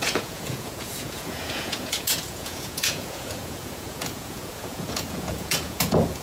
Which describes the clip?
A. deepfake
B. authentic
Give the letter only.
A